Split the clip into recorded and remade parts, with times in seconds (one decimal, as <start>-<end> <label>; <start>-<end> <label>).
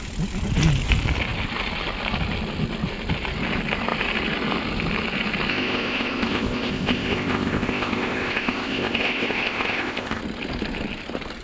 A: 0.0-5.5 recorded; 5.5-10.2 remade; 10.2-11.4 recorded